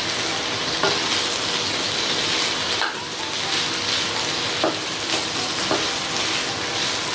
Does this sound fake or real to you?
real